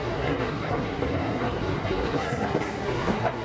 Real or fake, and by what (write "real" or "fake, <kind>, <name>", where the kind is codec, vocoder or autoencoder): fake, codec, SNAC